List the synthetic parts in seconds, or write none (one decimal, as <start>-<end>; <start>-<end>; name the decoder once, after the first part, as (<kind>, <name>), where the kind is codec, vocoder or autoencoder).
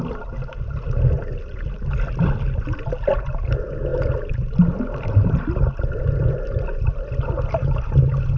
none